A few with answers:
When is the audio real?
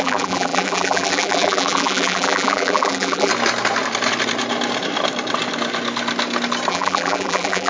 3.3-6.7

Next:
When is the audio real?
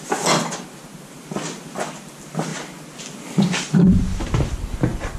0.0-5.2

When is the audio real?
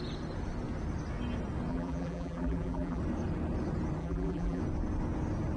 0.0-1.7; 3.0-4.0; 4.6-5.6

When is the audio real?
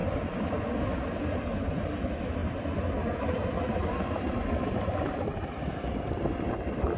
0.0-2.4; 6.3-7.0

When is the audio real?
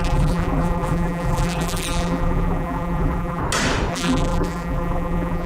3.4-3.9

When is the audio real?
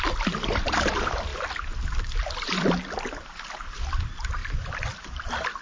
1.3-4.0; 4.4-5.6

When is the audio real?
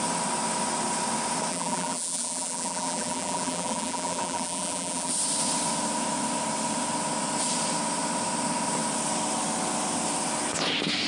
0.0-1.5; 5.1-11.1